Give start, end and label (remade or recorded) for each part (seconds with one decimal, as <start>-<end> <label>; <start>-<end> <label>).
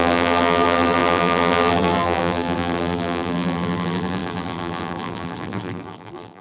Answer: 0.0-6.4 remade